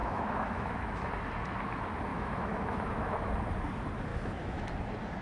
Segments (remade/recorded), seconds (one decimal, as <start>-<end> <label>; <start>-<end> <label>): 0.0-1.1 remade; 1.1-2.1 recorded; 2.1-3.3 remade; 3.3-4.1 recorded; 4.1-4.7 remade; 4.7-5.2 recorded